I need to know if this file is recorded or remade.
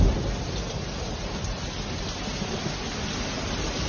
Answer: recorded